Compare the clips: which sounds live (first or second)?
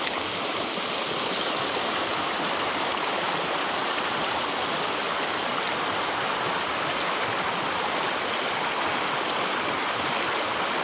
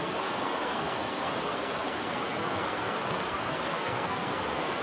first